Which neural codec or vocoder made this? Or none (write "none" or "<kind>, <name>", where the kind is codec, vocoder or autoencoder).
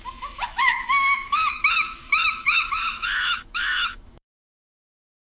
autoencoder, DAC-VAE